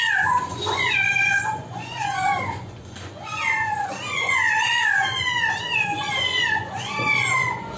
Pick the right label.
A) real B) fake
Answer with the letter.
B